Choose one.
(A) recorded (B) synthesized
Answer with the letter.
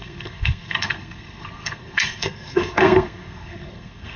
B